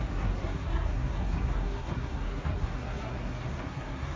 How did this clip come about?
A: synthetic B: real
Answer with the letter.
A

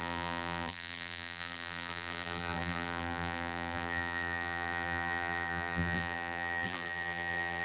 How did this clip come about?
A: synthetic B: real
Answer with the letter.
A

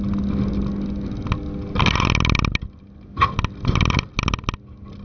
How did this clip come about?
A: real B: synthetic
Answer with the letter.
A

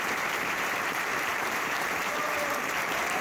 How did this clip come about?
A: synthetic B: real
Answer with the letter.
A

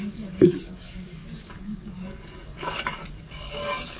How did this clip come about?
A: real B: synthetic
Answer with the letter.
B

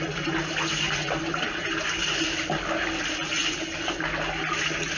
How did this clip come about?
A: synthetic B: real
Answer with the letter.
B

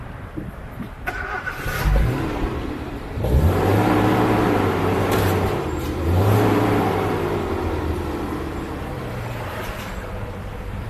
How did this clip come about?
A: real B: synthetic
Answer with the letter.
B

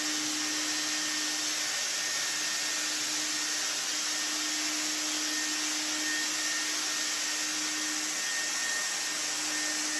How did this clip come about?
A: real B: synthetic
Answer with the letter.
A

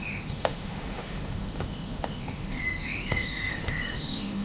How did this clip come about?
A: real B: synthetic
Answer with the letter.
B